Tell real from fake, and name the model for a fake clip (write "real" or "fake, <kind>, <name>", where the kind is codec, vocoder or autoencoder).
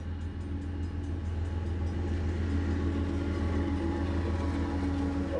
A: real